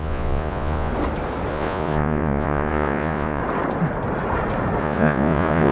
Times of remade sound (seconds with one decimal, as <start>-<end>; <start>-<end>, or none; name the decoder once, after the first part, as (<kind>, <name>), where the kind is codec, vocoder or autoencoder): 0.0-0.9 (vocoder, Vocos); 1.5-3.4; 4.8-5.7